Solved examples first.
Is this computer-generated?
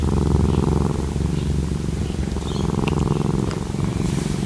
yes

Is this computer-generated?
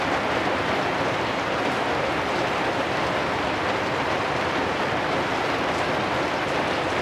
no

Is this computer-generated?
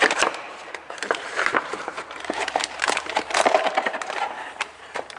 yes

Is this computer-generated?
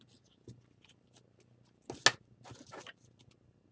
no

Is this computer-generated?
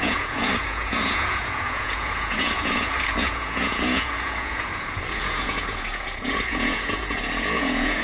yes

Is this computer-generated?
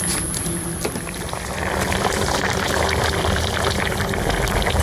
yes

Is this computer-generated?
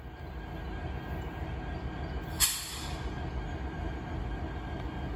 no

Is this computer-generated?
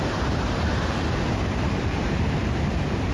yes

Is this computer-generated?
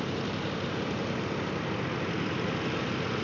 no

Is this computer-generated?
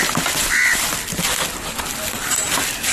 yes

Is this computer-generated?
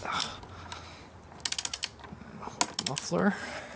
no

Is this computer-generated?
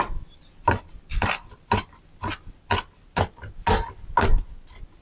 no